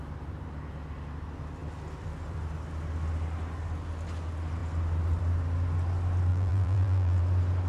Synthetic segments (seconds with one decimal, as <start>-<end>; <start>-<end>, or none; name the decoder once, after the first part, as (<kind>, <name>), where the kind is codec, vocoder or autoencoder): 6.3-7.2 (vocoder, BigVGAN v2)